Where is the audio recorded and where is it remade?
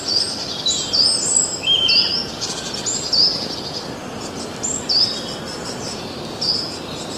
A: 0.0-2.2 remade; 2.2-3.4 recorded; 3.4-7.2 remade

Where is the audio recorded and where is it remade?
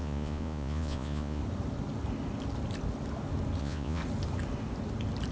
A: 0.0-1.4 remade; 1.4-3.6 recorded; 3.6-4.0 remade; 4.0-5.3 recorded